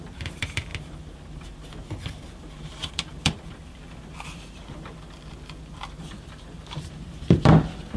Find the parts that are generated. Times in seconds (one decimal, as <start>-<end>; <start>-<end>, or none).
0.0-0.7; 2.9-8.0